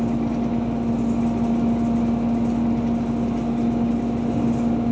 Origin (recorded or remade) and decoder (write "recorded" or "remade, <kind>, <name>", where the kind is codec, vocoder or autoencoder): recorded